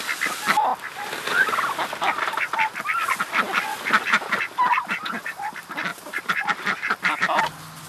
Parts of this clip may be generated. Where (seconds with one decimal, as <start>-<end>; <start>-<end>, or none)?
5.9-7.4